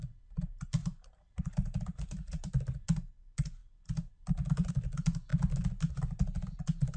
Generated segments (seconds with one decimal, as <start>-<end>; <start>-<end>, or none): 0.8-1.8